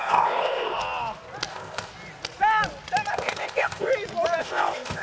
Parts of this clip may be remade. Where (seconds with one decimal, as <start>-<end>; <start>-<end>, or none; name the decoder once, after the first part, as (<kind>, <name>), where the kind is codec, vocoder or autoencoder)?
0.0-0.8 (codec, ZipCodec); 1.5-1.9; 3.1-3.9; 4.4-5.0